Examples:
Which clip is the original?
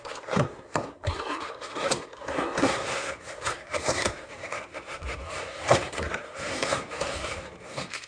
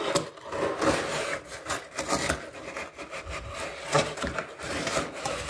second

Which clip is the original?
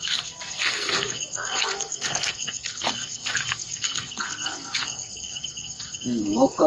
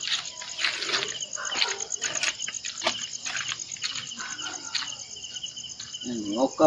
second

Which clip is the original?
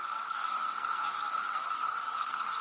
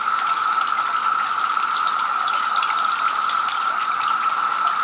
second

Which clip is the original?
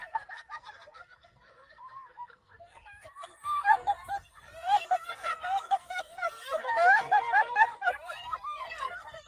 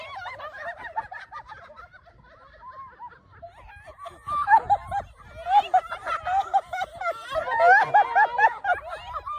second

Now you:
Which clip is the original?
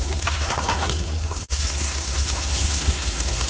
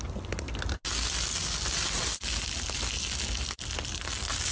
second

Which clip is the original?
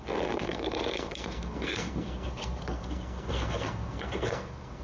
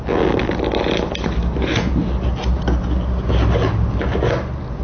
second